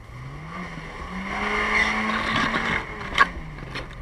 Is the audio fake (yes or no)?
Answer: no